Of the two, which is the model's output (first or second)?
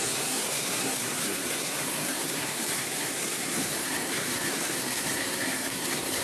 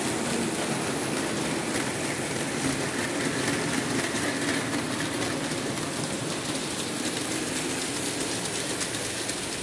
first